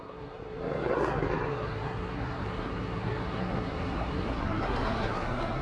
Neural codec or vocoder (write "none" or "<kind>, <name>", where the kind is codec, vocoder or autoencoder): codec, SNAC